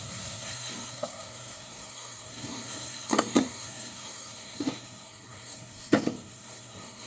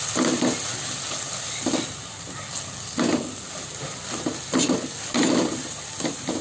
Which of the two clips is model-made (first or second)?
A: first